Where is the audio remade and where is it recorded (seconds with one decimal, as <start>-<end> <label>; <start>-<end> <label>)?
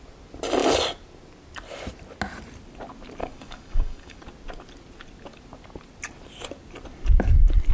0.0-3.2 recorded; 3.2-4.2 remade; 4.2-7.7 recorded